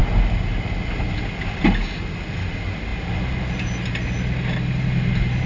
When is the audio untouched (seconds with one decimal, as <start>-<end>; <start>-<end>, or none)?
0.0-5.5